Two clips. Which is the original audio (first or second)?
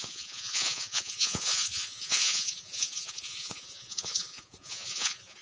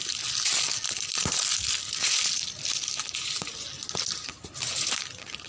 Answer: second